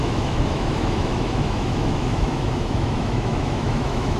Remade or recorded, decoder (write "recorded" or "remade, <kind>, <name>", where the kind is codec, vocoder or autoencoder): remade, autoencoder, DAC-VAE